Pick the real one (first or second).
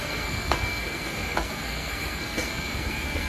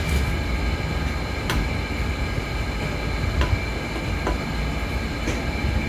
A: second